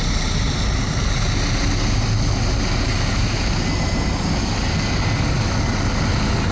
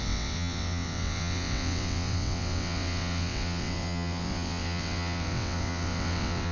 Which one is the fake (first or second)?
second